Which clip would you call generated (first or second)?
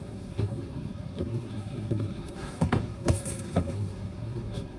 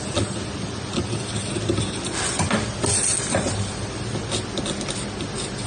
first